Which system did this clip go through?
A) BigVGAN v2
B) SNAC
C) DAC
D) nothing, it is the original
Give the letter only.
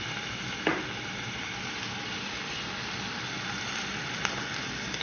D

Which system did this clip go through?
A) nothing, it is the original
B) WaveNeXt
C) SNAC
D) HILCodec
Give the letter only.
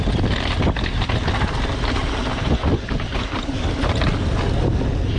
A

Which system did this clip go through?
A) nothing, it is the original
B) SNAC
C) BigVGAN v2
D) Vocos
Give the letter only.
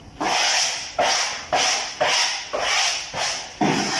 A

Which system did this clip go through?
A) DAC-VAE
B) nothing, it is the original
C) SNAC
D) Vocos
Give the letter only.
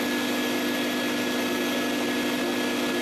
B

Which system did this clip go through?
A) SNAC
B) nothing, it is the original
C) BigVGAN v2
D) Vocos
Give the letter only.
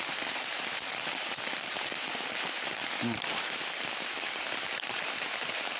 C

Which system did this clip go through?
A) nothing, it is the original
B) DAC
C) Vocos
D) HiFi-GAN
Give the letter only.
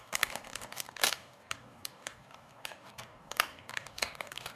B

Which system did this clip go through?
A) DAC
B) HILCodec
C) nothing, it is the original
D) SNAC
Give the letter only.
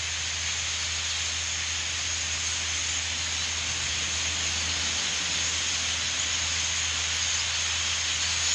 C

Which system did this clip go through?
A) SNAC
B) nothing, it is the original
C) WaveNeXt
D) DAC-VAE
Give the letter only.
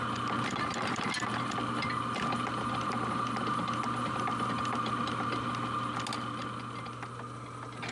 B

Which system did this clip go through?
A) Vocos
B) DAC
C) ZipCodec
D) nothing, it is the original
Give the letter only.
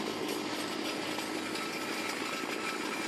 D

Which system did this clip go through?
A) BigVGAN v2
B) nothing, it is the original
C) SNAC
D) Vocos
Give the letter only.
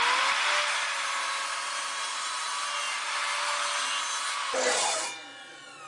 B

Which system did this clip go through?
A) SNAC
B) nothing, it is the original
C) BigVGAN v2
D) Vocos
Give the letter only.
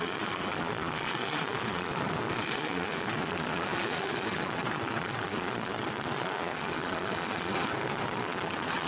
D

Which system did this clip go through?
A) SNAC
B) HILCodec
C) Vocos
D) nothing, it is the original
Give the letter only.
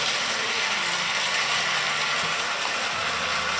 D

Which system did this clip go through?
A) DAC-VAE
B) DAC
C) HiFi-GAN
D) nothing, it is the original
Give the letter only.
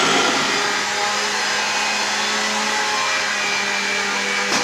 D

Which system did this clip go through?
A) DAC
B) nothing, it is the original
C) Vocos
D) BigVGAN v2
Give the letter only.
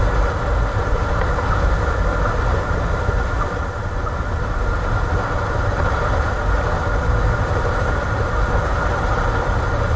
B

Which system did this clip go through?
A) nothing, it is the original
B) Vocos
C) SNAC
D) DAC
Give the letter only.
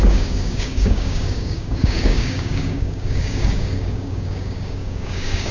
D